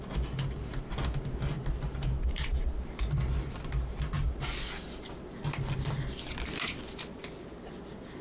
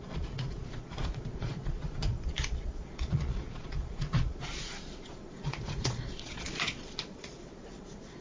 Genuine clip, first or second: first